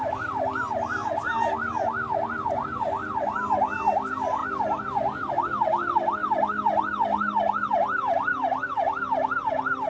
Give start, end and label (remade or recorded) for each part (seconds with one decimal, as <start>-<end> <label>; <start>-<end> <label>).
0.0-9.9 recorded